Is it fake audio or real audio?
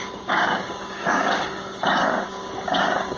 fake